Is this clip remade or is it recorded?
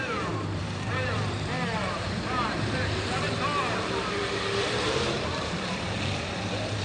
remade